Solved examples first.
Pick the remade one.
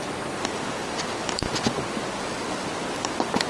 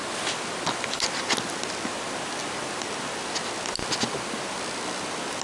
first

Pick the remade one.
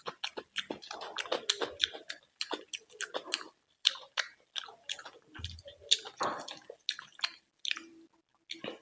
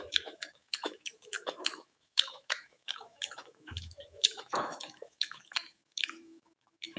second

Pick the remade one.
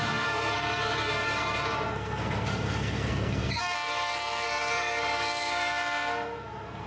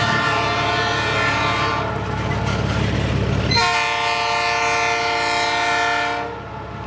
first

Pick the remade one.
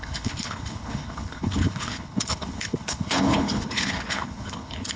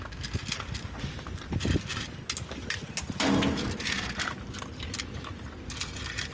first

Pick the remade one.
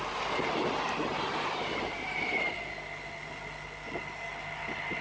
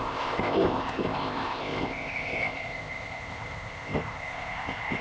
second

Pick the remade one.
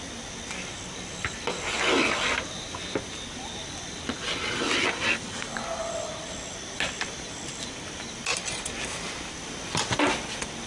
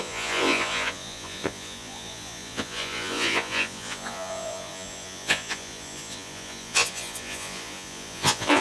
second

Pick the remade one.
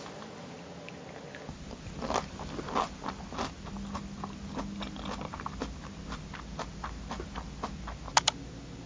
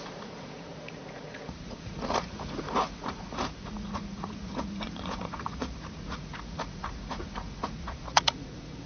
second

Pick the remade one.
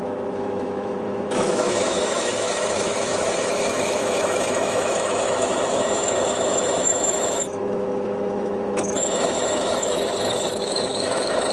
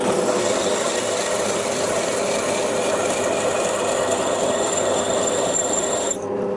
first